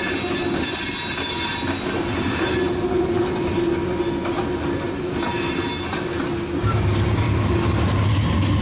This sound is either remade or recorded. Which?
recorded